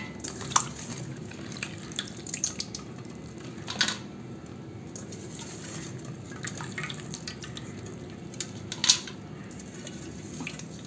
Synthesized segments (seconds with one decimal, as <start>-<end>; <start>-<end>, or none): none